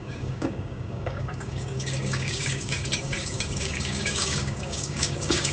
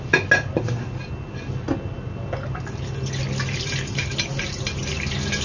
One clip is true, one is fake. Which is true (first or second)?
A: second